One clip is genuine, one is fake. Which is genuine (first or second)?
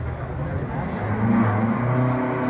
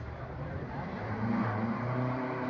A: first